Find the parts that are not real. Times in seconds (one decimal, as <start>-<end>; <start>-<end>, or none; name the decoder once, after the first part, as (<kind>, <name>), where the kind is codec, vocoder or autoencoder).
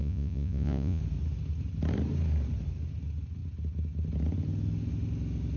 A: 0.0-1.0 (vocoder, Vocos)